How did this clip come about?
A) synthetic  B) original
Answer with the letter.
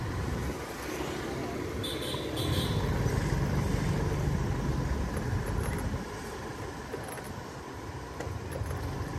B